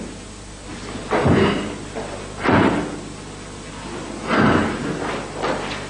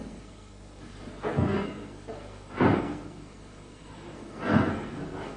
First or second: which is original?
first